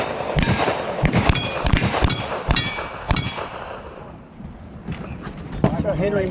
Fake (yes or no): yes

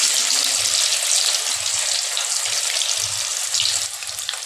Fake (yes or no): no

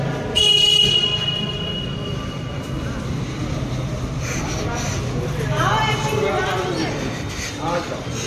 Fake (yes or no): no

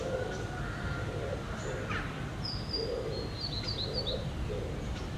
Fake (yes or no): no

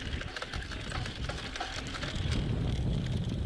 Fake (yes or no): no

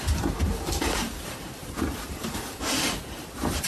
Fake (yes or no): yes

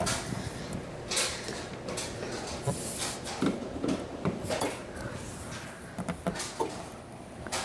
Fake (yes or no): yes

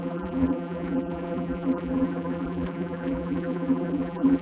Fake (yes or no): yes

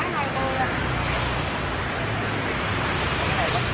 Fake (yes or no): no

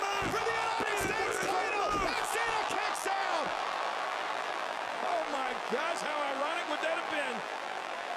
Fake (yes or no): yes